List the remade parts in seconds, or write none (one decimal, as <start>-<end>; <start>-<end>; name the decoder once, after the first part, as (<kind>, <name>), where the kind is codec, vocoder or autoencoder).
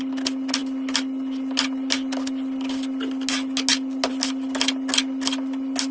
none